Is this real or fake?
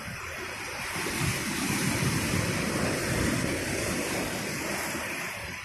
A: real